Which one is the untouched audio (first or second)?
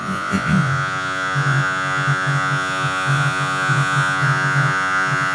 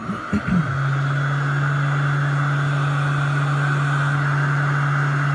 second